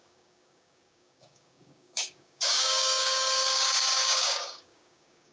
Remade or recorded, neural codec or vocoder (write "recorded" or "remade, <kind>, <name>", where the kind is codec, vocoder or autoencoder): remade, codec, DAC